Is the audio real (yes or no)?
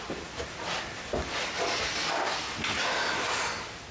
yes